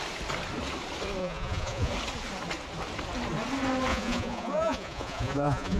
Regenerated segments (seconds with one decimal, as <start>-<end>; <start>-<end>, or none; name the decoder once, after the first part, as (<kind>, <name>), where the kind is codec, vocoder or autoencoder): 1.2-1.9 (vocoder, Vocos); 3.9-5.8

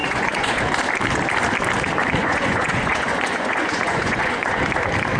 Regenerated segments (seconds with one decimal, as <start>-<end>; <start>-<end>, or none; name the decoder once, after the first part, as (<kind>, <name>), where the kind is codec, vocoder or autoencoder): 0.0-0.6 (vocoder, Vocos); 2.2-4.6